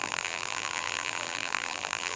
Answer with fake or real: fake